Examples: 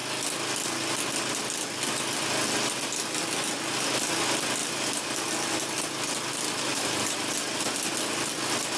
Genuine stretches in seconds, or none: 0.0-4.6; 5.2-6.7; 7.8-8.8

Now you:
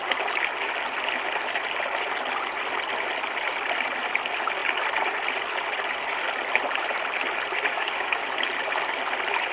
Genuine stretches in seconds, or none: 0.0-7.7; 8.2-9.5

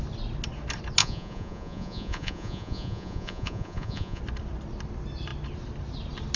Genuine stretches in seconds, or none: 0.0-1.0; 4.2-6.4

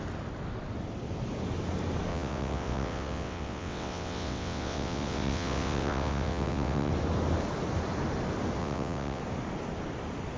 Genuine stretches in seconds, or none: 0.0-2.1; 6.9-8.6; 9.2-10.4

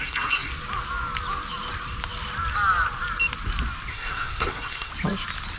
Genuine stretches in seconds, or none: 0.5-3.9; 4.9-5.6

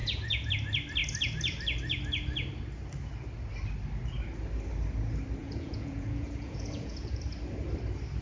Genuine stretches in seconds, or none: 0.5-5.4; 7.2-8.2

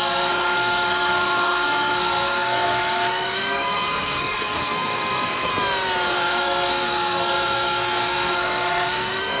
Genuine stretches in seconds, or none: 5.5-6.1